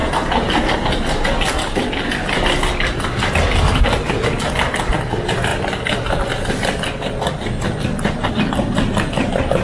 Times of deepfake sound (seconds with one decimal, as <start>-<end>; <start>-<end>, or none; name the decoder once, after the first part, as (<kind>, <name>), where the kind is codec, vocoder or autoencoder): none